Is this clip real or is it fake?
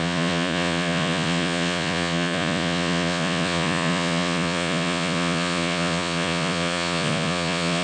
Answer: fake